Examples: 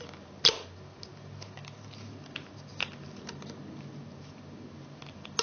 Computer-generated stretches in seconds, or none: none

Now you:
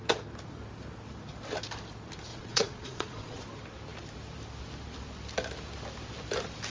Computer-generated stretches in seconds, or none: 2.3-3.4 (vocoder, Vocos)

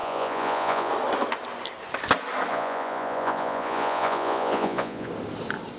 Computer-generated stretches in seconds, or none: 0.0-0.9 (vocoder, Vocos); 2.5-5.1